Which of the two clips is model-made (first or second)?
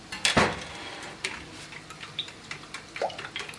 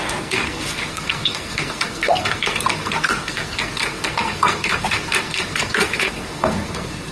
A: second